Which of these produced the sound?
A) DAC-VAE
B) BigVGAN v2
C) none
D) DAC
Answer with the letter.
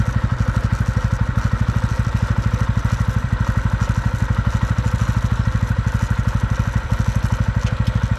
C